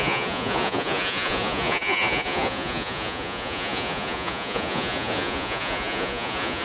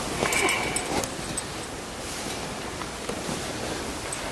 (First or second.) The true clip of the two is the second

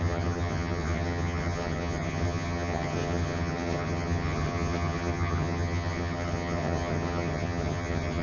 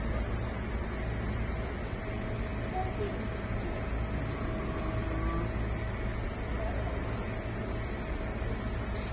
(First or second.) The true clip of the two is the second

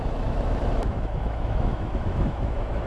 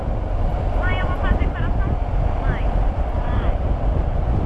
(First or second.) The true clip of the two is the second